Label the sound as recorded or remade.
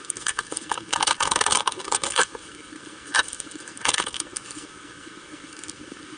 remade